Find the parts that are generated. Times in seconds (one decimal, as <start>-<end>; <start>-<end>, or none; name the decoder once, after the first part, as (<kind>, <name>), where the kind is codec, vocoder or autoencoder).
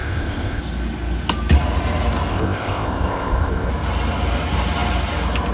0.0-0.6 (codec, ZipCodec); 2.3-3.7